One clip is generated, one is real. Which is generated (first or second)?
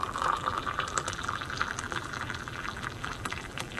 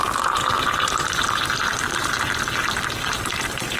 first